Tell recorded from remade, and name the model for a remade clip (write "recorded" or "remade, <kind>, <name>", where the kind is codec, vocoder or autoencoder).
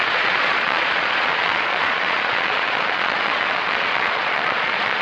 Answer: remade, vocoder, Vocos